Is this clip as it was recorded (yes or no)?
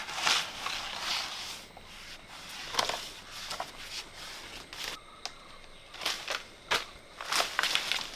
yes